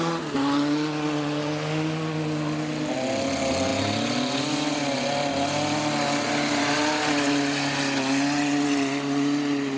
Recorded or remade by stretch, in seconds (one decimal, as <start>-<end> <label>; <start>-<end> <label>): 0.0-9.8 recorded